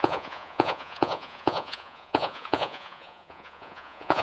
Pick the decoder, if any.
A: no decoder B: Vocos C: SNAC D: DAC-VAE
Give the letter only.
B